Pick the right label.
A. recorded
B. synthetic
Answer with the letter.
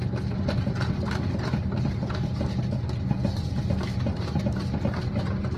A